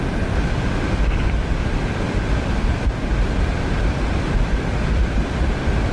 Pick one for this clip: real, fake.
real